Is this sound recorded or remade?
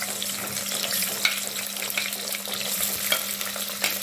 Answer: recorded